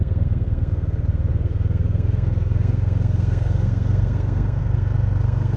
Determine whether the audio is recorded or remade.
remade